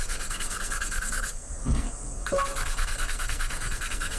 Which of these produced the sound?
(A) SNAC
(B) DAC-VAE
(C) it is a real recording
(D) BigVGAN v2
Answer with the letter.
A